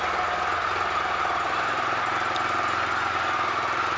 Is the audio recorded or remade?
recorded